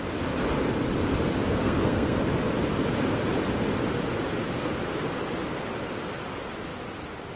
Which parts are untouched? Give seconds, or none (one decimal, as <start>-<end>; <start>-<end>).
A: 0.0-1.6; 2.2-7.4